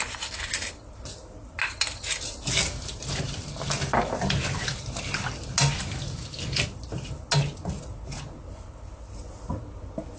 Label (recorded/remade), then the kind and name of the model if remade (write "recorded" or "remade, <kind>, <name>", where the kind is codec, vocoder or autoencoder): recorded